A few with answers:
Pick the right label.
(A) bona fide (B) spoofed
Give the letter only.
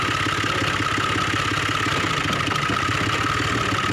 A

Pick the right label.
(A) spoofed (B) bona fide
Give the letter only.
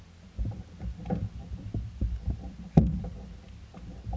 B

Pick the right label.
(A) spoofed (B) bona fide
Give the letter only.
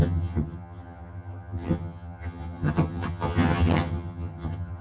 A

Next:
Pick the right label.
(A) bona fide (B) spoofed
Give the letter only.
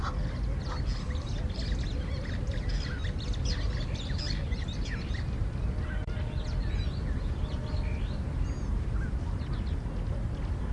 A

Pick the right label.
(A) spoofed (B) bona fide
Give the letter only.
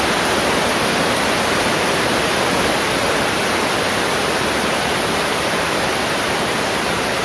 B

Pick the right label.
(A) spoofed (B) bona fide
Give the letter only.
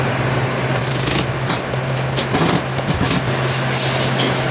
B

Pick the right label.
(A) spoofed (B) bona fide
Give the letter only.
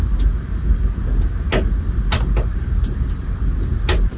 B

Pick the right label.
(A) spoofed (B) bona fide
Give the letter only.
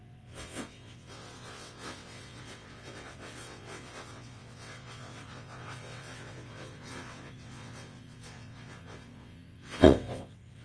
A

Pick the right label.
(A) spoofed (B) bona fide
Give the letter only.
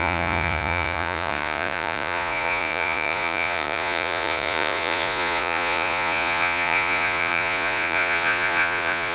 A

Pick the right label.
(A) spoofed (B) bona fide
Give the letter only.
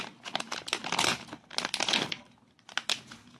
B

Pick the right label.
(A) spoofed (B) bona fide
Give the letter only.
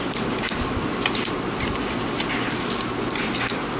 B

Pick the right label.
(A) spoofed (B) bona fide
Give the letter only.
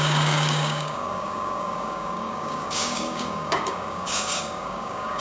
A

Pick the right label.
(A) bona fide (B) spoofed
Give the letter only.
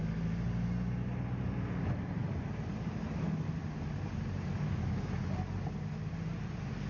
A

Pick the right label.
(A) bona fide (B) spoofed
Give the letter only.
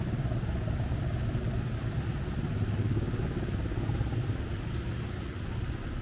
A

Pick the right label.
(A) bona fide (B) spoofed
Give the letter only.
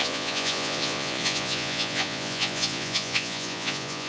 B